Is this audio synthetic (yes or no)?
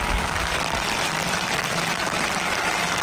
no